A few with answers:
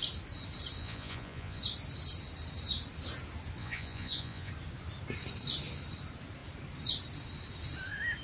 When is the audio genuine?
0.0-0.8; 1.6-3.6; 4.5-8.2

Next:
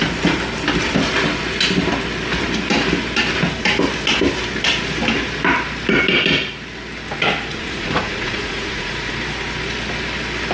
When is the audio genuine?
0.0-7.5; 9.1-10.5

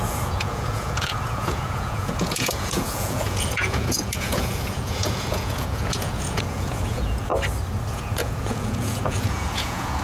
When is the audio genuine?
7.3-7.9